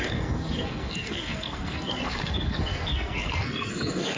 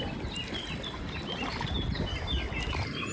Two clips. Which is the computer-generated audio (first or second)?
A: first